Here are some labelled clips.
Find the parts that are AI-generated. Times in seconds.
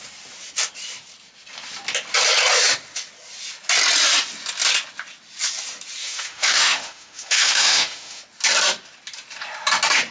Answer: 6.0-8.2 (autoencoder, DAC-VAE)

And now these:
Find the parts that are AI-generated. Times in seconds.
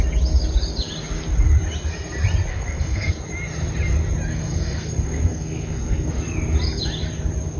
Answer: 2.5-3.1 (codec, SNAC); 4.3-6.1